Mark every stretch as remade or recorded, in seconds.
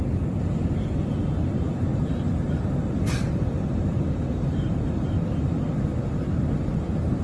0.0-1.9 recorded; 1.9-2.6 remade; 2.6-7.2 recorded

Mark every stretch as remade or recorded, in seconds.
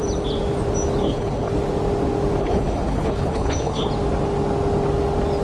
0.0-1.0 recorded; 1.0-1.5 remade; 1.5-2.4 recorded; 2.4-3.9 remade; 3.9-5.4 recorded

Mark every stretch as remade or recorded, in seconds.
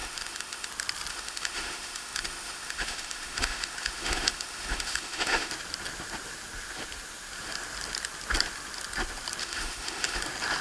0.0-0.7 remade; 0.7-1.1 recorded; 1.1-5.5 remade; 5.5-9.4 recorded; 9.4-10.2 remade; 10.2-10.6 recorded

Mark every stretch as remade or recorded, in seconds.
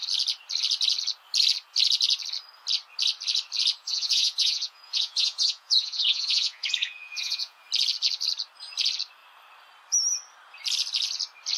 0.0-3.8 recorded; 3.8-7.6 remade; 7.6-11.6 recorded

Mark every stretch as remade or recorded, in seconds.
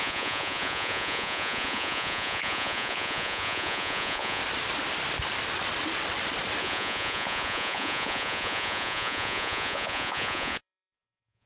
0.0-4.4 remade; 4.4-6.6 recorded; 6.6-11.5 remade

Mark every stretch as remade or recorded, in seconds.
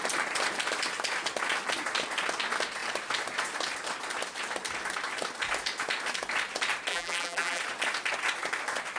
0.0-6.9 recorded; 6.9-7.6 remade; 7.6-9.0 recorded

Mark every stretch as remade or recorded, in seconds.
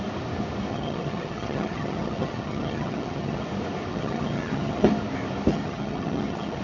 0.0-0.7 recorded; 0.7-3.4 remade; 3.4-3.9 recorded; 3.9-4.9 remade; 4.9-5.5 recorded; 5.5-6.6 remade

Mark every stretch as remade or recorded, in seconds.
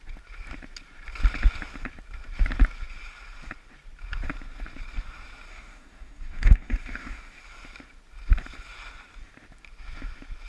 0.0-5.5 recorded; 5.5-7.4 remade; 7.4-10.5 recorded